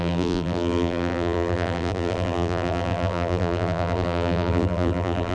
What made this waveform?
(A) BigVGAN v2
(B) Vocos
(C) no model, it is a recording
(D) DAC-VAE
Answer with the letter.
A